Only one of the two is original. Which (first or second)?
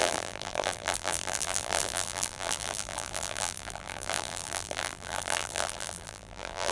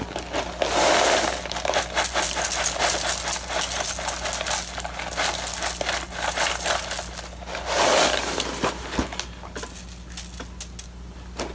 second